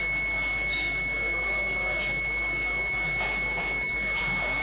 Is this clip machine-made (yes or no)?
yes